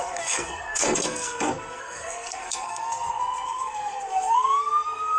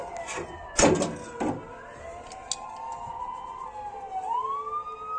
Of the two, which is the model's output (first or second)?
first